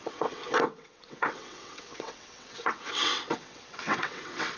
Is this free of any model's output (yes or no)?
no